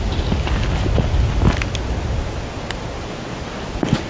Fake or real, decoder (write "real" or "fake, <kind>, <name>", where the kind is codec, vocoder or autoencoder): real